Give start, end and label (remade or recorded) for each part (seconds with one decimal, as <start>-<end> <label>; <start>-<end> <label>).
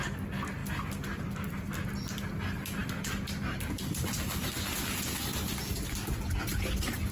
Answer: 0.0-7.1 recorded